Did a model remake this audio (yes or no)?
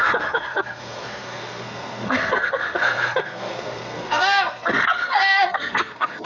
yes